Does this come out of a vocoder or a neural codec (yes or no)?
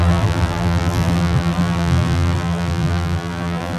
yes